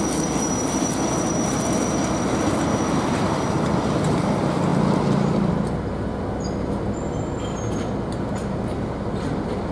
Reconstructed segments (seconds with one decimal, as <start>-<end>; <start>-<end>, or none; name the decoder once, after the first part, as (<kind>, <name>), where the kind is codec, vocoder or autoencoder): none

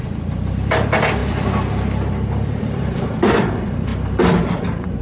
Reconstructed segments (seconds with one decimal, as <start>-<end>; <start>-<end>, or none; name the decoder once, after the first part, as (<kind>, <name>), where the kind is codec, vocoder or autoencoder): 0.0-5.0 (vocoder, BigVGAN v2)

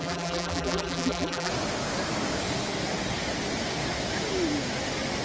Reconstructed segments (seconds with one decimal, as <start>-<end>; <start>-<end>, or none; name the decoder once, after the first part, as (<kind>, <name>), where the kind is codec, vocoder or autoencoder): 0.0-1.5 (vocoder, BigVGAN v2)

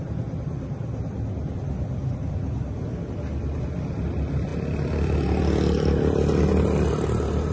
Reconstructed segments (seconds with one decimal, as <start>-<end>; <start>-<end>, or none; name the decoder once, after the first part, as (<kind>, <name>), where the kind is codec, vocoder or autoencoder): none